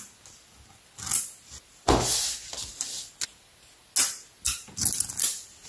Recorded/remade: recorded